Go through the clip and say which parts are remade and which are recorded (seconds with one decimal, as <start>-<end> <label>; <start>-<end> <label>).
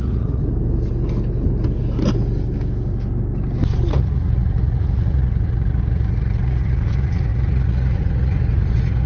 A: 0.0-0.4 remade; 0.4-3.9 recorded; 3.9-9.1 remade